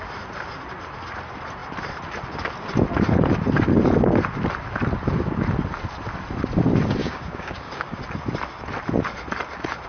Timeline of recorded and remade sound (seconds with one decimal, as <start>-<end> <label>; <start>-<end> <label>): 0.0-7.0 recorded; 7.0-8.0 remade; 8.0-9.9 recorded